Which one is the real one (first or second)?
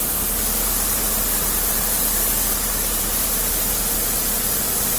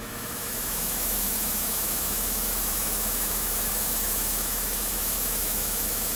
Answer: first